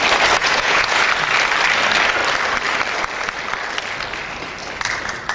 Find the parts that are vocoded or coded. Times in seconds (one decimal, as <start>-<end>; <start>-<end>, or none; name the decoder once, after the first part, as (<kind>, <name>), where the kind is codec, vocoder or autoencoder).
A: 0.4-1.0 (vocoder, Vocos)